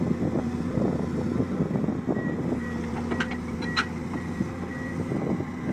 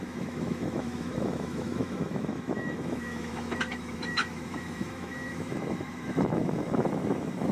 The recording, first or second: first